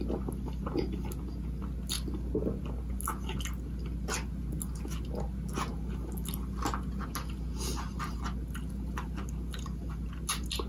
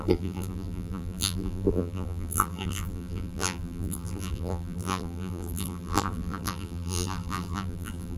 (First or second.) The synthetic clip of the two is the second